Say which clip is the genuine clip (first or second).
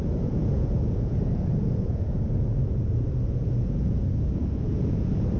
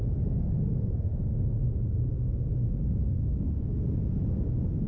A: second